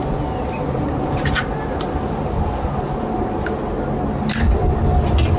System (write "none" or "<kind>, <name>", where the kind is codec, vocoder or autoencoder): none